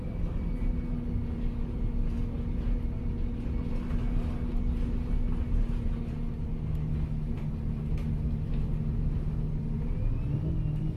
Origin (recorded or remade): recorded